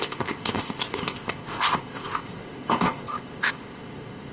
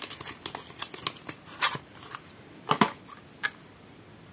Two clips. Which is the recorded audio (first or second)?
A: second